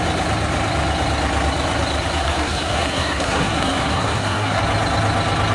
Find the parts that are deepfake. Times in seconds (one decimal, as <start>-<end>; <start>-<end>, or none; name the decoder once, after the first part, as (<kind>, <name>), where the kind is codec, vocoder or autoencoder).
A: 2.2-4.6 (codec, SNAC)